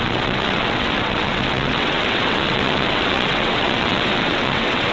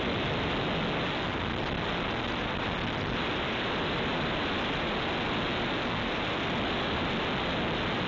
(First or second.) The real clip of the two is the second